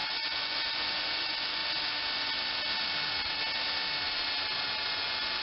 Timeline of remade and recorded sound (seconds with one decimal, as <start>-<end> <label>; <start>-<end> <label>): 0.0-1.6 remade; 1.6-4.8 recorded; 4.8-5.4 remade